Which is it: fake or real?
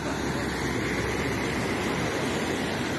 real